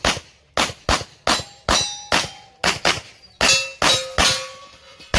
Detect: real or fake real